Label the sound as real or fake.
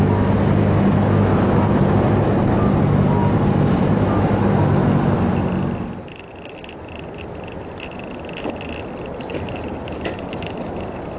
real